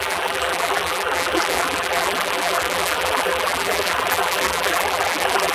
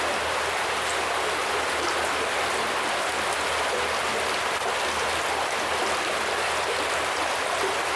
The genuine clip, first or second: second